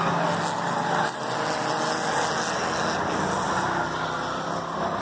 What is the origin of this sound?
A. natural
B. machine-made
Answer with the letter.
A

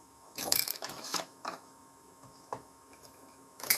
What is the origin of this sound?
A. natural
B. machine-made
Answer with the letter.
B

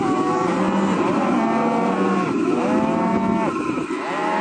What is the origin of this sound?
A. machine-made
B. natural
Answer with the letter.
B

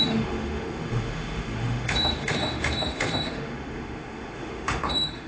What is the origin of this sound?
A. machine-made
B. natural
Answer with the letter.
A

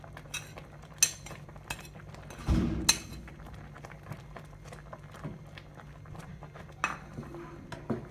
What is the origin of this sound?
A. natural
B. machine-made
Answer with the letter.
A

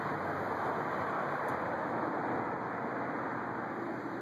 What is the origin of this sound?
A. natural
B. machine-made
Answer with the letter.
A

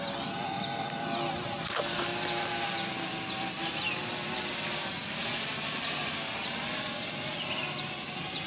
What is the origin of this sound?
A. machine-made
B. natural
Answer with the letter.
B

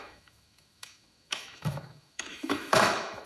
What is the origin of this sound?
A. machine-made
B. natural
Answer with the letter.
A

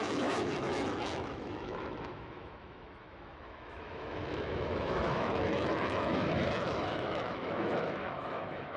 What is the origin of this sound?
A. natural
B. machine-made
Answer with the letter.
B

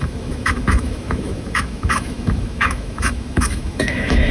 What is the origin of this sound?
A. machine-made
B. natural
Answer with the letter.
A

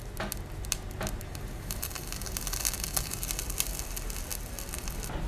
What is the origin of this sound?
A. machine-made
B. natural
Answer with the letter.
B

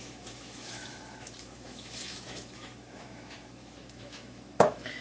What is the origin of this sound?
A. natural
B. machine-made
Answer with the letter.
B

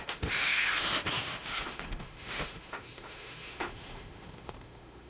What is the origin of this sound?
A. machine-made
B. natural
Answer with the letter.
A